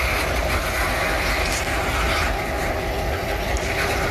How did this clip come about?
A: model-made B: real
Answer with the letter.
A